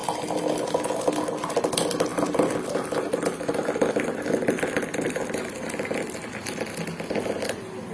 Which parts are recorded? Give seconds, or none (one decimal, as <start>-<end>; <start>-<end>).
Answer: 0.0-7.9